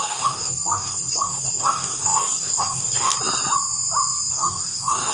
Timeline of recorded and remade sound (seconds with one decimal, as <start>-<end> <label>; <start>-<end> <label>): 0.0-3.1 remade; 3.1-4.3 recorded; 4.3-5.1 remade